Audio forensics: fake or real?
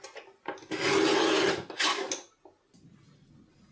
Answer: real